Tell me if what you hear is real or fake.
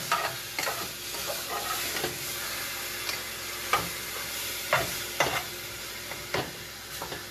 real